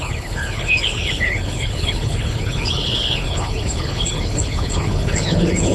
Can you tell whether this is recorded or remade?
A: remade